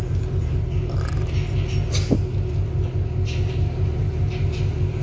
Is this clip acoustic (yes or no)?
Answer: yes